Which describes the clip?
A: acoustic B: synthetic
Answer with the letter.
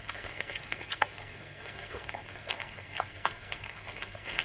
B